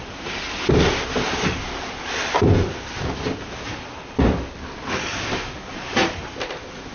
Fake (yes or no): no